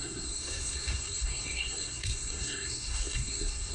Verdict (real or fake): fake